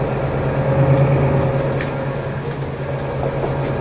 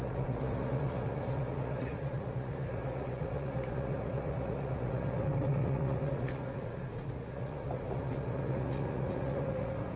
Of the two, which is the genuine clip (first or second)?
first